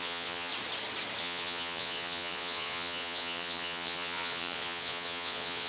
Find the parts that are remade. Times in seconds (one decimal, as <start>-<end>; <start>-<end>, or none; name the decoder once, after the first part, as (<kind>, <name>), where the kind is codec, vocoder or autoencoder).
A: 0.0-0.5 (vocoder, Vocos); 1.2-5.7